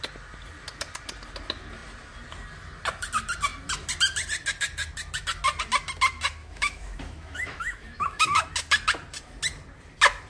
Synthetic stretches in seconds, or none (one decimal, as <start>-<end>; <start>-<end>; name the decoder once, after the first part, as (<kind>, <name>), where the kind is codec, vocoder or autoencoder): 6.4-8.4 (autoencoder, DAC-VAE)